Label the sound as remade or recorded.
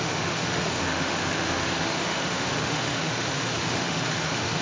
remade